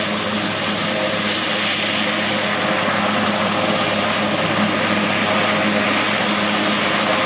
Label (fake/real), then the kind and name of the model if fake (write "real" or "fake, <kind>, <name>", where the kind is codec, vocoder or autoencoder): real